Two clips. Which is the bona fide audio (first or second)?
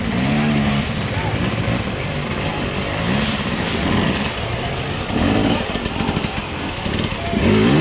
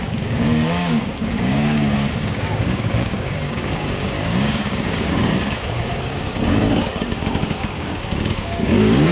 first